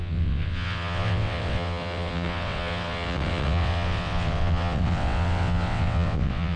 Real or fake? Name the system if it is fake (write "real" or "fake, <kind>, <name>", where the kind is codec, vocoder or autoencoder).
fake, vocoder, WaveNeXt